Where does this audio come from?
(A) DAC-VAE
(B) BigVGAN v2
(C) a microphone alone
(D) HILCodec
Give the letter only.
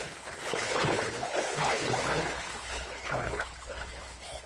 D